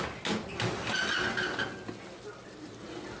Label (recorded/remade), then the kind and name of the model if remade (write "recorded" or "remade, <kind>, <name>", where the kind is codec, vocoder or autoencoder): recorded